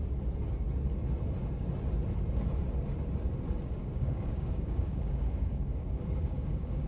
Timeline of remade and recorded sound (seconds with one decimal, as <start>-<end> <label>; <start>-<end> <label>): 0.0-3.8 recorded; 3.8-6.9 remade